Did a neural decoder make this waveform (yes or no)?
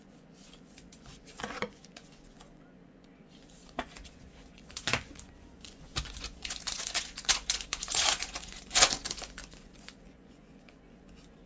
yes